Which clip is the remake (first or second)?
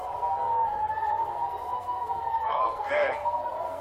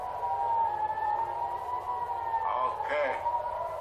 first